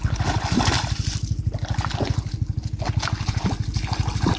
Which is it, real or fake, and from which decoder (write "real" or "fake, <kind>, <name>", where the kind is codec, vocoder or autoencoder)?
real